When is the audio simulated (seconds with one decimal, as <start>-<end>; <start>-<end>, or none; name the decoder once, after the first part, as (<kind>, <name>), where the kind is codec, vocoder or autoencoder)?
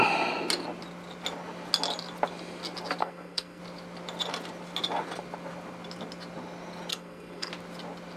3.0-3.6 (codec, SNAC); 6.9-7.5